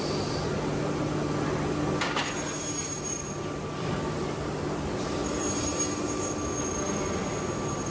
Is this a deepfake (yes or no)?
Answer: no